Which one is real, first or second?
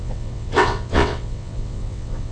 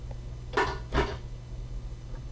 second